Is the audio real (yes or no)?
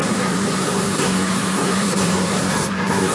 no